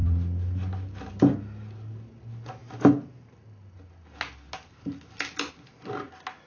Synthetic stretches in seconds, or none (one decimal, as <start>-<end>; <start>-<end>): none